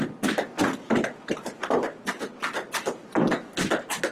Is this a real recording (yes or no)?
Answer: yes